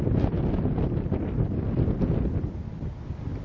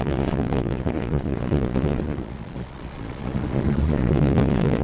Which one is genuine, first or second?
first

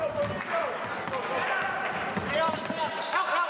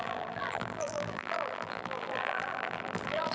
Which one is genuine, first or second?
first